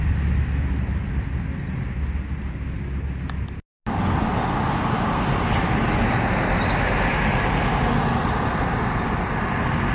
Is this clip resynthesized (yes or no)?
no